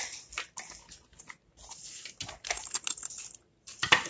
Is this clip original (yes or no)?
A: yes